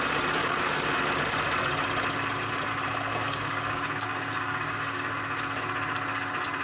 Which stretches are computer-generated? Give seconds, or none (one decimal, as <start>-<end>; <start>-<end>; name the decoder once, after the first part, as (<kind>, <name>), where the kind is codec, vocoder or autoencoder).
0.4-1.0 (codec, DAC); 3.1-5.0